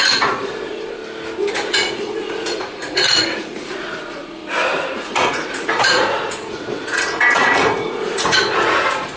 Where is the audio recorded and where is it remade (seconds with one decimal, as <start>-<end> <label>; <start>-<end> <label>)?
0.0-1.0 remade; 1.0-1.5 recorded; 1.5-4.4 remade; 4.4-5.0 recorded; 5.0-9.2 remade